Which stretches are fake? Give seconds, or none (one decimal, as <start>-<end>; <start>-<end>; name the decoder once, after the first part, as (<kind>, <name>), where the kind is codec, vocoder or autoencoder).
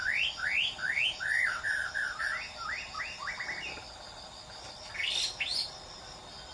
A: 0.0-3.0 (vocoder, BigVGAN v2)